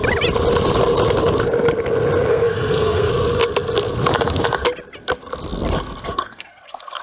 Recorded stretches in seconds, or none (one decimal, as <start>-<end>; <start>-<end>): 0.0-2.3; 3.1-6.0